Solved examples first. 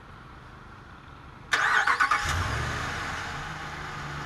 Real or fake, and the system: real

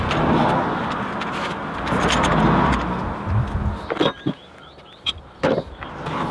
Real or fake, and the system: real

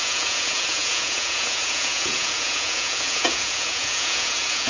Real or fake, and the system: fake, vocoder, Vocos